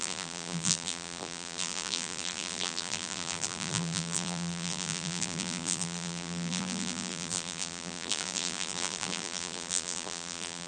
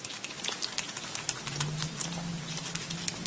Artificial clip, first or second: first